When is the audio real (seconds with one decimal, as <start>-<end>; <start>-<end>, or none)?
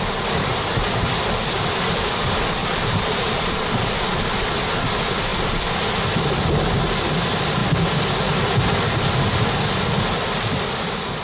0.0-2.6; 3.7-11.2